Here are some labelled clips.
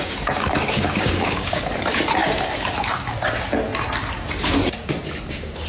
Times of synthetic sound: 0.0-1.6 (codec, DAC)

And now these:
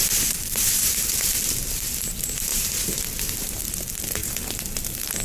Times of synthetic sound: none

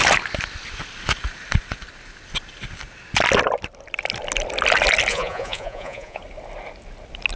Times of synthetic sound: 5.1-6.2 (vocoder, Vocos)

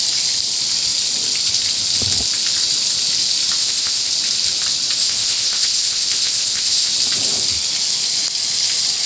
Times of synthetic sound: 3.6-4.1 (codec, ZipCodec); 5.0-6.9

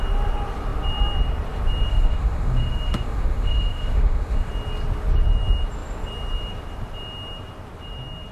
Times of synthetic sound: 1.9-4.5 (autoencoder, DAC-VAE)